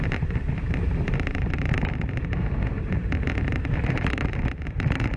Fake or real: fake